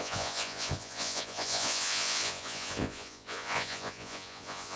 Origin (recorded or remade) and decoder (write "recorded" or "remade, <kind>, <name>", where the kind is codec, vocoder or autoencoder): remade, vocoder, Vocos